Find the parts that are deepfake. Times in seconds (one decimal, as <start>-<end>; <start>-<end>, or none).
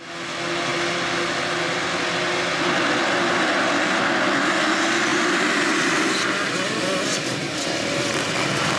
5.1-6.1